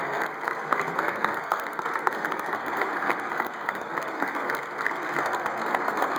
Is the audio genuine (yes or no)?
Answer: no